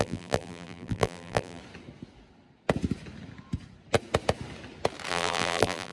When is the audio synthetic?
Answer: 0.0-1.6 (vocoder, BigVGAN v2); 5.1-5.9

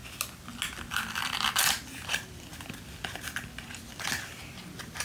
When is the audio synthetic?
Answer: none

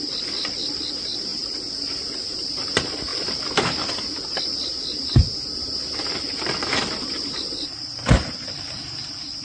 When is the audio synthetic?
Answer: 0.0-3.1 (vocoder, BigVGAN v2); 5.8-9.4

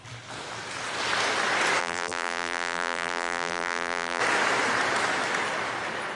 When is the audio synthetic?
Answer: 1.8-4.2 (vocoder, BigVGAN v2)